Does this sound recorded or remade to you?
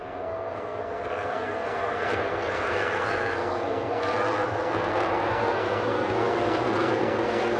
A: remade